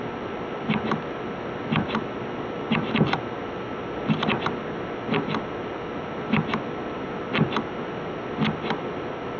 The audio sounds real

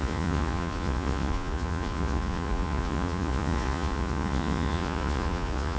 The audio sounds fake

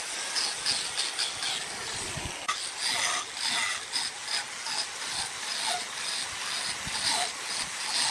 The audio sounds real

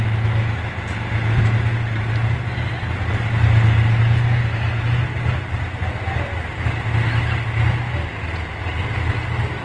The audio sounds real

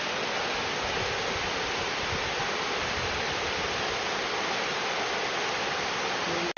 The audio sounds real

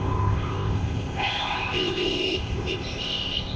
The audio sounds fake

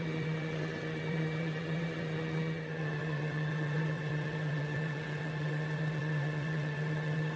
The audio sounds fake